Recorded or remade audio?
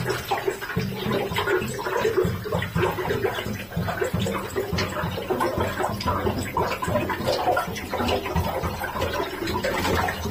recorded